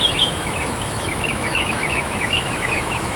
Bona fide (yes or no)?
no